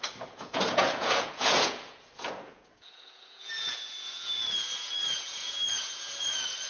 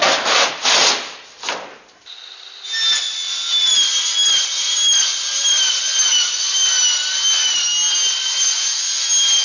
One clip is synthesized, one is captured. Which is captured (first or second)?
second